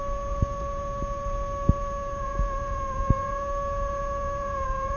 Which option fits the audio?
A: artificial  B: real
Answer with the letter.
A